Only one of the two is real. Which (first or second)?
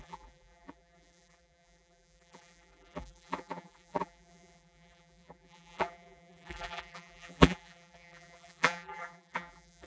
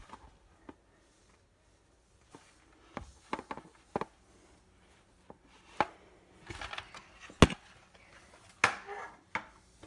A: second